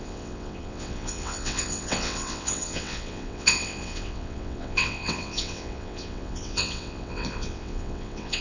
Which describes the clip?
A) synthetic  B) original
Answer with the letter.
A